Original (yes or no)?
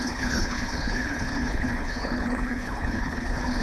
no